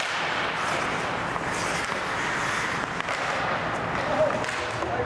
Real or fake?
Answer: real